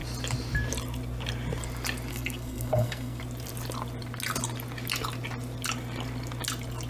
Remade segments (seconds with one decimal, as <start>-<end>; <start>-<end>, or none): 2.1-3.2